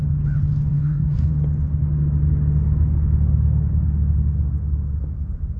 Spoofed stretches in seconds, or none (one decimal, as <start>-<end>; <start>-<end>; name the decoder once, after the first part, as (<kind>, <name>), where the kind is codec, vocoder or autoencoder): 0.7-1.3 (codec, SNAC)